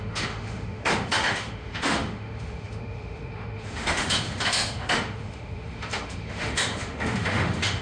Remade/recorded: remade